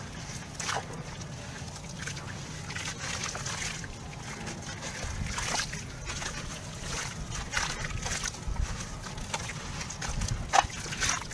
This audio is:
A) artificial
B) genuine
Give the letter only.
B